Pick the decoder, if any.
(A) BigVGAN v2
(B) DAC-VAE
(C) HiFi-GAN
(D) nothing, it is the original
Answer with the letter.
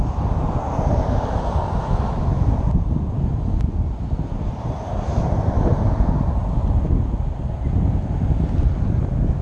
D